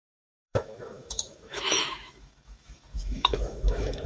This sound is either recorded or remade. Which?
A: remade